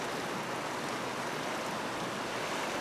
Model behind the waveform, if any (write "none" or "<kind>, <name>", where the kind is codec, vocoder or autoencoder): none